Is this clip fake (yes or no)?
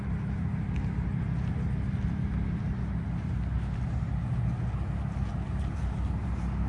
no